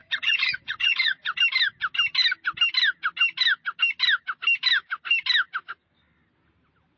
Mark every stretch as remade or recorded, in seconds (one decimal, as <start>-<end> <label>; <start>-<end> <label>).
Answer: 0.0-1.4 remade; 1.4-7.0 recorded